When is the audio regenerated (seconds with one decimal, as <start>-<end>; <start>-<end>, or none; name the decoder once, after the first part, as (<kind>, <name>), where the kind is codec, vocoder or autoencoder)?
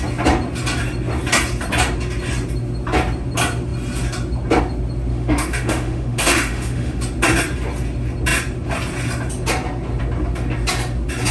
5.1-7.0 (autoencoder, DAC-VAE)